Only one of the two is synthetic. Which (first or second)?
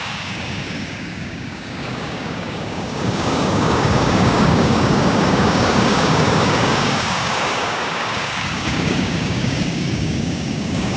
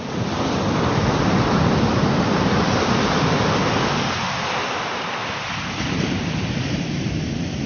first